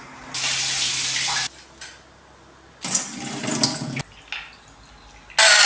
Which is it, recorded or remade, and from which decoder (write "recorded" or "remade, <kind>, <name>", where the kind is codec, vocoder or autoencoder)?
recorded